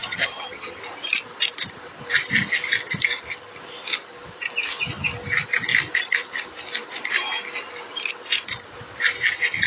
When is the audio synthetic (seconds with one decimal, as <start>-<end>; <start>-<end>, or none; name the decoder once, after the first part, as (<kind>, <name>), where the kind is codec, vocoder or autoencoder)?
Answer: 0.0-0.8 (vocoder, HiFi-GAN)